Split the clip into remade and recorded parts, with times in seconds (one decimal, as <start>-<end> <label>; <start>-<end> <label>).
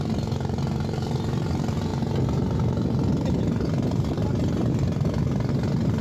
0.0-6.0 remade